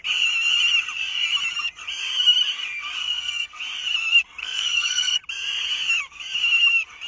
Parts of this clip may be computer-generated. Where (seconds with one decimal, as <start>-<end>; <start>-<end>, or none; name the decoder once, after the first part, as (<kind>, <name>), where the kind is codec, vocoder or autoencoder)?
3.0-3.6 (codec, SNAC); 4.4-5.2

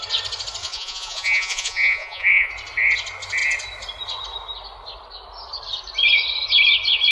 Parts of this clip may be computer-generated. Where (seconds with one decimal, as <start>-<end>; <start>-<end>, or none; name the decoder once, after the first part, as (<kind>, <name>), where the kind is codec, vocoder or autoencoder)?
0.6-2.5 (vocoder, Vocos)